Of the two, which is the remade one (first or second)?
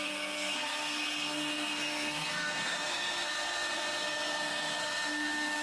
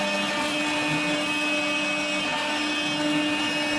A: first